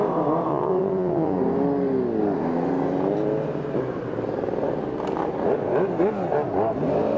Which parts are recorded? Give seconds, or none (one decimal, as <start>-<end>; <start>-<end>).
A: 0.0-0.5; 1.4-7.2